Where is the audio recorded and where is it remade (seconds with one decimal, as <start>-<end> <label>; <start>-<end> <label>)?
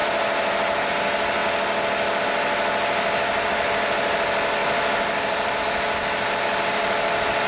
0.0-0.9 remade; 0.9-4.6 recorded; 4.6-5.6 remade; 5.6-7.5 recorded